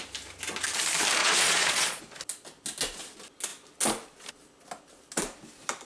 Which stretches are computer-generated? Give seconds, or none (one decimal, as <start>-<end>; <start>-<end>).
1.2-2.0